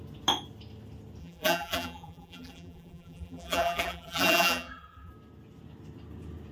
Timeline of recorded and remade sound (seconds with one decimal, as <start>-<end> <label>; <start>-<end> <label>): 0.0-1.2 recorded; 1.2-5.1 remade; 5.1-6.5 recorded